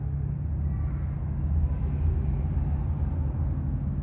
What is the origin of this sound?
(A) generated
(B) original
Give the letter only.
B